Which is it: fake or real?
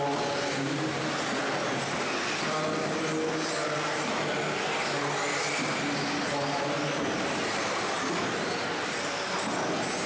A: real